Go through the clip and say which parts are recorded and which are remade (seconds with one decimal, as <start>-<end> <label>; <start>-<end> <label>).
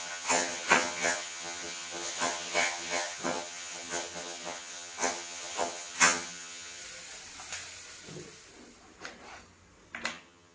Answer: 0.0-6.8 remade; 6.8-10.1 recorded; 10.1-10.5 remade